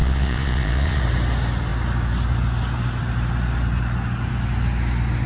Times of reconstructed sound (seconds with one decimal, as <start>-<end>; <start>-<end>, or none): 0.0-1.0